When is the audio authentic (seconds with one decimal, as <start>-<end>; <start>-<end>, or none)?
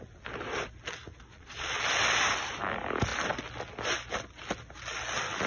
0.0-1.3; 1.8-5.5